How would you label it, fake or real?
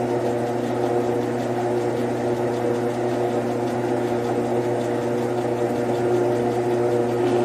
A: real